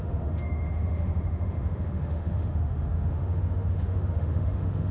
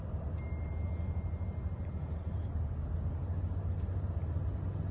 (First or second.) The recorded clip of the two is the second